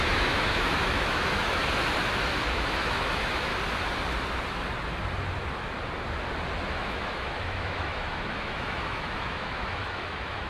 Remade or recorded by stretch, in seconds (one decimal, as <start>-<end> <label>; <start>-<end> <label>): 0.0-1.6 remade; 1.6-2.5 recorded; 2.5-3.5 remade; 3.5-6.7 recorded; 6.7-10.5 remade